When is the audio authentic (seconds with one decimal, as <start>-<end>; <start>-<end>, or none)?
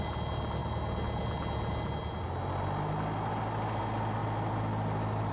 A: 0.0-5.3